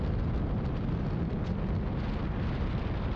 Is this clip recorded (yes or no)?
yes